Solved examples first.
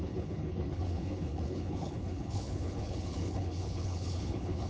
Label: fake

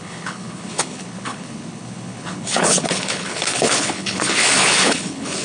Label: fake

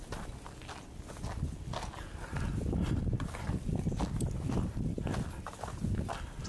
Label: real